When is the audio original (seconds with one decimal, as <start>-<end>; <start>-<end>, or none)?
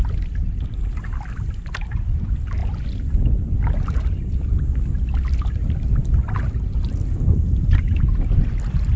0.0-9.0